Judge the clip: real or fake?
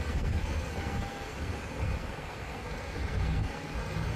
fake